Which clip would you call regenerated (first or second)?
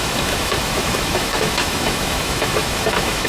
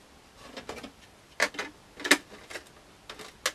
first